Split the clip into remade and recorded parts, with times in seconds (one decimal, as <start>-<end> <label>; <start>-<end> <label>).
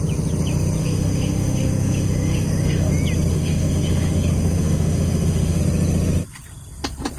0.0-0.8 recorded; 0.8-2.9 remade; 2.9-3.3 recorded; 3.3-5.6 remade; 5.6-7.2 recorded